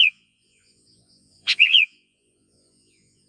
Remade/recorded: remade